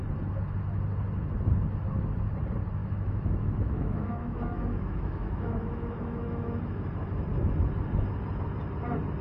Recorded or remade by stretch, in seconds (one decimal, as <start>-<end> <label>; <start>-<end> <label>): 0.0-2.8 recorded; 2.8-6.6 remade; 6.6-9.2 recorded